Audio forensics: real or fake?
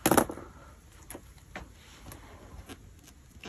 real